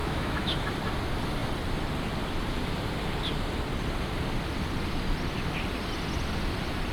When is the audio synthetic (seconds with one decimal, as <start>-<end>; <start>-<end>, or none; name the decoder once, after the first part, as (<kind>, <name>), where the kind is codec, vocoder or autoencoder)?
0.0-0.7 (autoencoder, DAC-VAE)